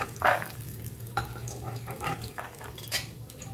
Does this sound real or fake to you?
fake